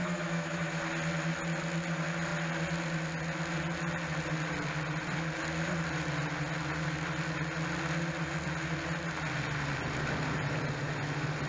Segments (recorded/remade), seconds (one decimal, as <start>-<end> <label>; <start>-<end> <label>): 0.0-0.8 remade; 0.8-11.5 recorded